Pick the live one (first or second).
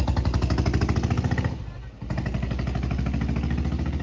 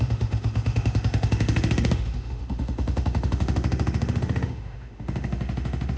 first